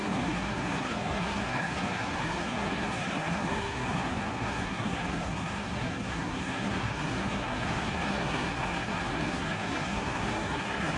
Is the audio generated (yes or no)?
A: yes